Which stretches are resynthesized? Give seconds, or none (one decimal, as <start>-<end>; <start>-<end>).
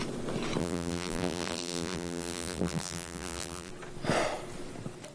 0.6-3.7